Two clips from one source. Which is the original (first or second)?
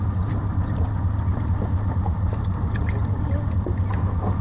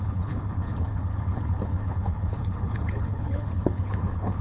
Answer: first